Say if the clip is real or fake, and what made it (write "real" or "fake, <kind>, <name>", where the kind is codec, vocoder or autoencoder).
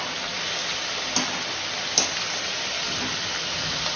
real